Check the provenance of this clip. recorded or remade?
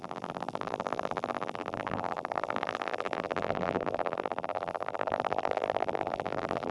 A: remade